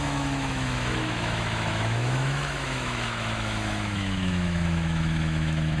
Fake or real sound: fake